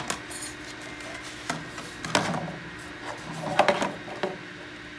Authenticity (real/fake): real